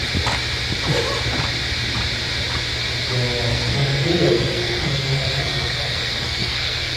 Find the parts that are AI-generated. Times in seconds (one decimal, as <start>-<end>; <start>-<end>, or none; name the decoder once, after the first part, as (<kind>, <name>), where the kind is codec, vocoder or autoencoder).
3.5-7.0 (codec, SNAC)